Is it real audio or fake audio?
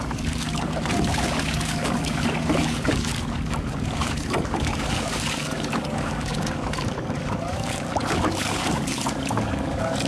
fake